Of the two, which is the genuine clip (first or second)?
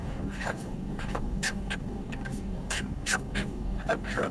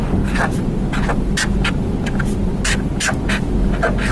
second